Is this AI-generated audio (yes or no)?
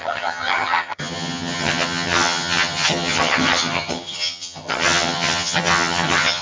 yes